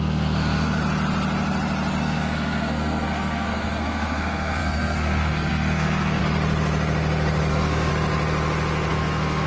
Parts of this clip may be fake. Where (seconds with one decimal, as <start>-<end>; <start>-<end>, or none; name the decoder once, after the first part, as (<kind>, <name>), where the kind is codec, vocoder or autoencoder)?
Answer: 0.0-0.8 (codec, SNAC); 2.0-6.2; 7.5-7.9; 8.9-9.5